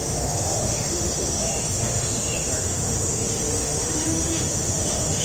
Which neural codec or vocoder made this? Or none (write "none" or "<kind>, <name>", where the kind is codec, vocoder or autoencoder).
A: autoencoder, DAC-VAE